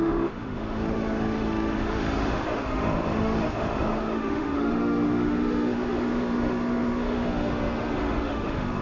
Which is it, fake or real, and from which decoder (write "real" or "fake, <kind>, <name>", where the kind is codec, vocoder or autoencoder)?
fake, autoencoder, DAC-VAE